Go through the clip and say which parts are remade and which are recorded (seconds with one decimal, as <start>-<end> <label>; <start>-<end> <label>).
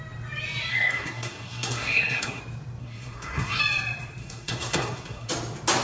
0.0-0.7 recorded; 0.7-2.4 remade; 2.4-2.8 recorded; 2.8-3.6 remade; 3.6-4.2 recorded; 4.2-5.3 remade; 5.3-5.8 recorded